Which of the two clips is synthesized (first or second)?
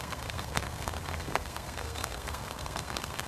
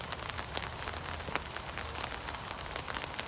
first